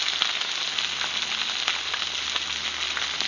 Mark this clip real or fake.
real